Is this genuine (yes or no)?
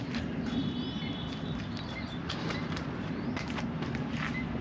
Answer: no